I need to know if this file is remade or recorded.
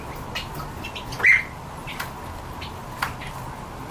recorded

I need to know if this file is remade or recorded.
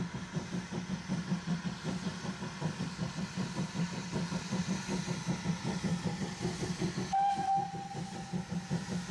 recorded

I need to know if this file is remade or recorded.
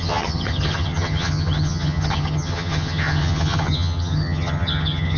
remade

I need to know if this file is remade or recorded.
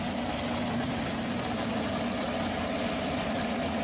recorded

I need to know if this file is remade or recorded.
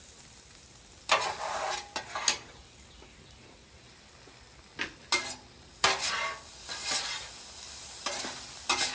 recorded